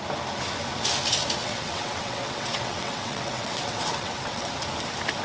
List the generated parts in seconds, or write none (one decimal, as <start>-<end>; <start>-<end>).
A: 1.4-4.5